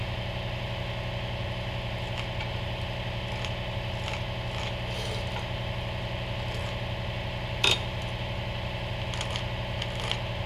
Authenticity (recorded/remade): recorded